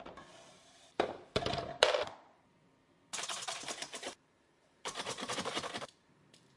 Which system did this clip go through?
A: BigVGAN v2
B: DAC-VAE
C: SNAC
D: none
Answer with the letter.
A